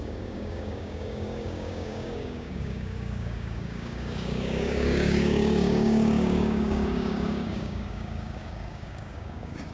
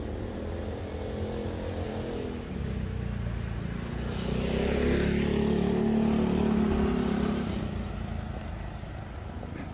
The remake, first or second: first